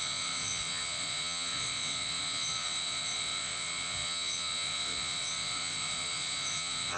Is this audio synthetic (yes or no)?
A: yes